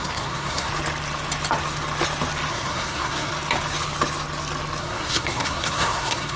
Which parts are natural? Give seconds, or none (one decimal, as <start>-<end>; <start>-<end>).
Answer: 0.7-2.5; 3.3-4.8

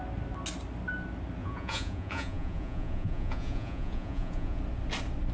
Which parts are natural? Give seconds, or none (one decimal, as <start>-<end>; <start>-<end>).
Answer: 0.0-1.4; 4.6-5.3

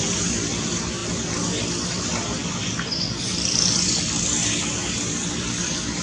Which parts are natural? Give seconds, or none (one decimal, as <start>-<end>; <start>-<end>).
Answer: 0.0-6.0

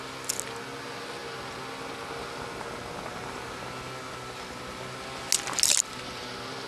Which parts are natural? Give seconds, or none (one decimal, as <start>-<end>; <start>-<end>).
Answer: 0.0-6.7

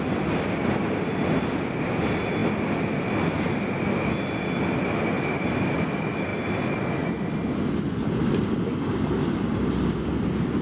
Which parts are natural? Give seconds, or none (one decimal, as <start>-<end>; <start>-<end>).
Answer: 0.0-10.6